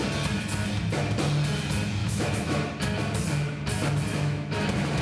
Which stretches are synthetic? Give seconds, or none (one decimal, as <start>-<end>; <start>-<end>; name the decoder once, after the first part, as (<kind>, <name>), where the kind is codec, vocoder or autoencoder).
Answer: 2.0-2.6 (autoencoder, DAC-VAE); 4.1-4.6